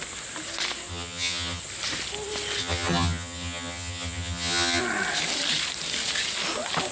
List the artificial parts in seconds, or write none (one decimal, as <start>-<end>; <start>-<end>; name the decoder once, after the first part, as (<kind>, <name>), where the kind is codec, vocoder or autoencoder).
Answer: 0.9-1.6 (vocoder, HiFi-GAN); 2.6-4.8